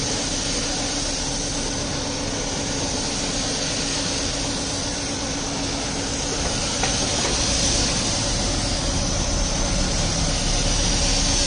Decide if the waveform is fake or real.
real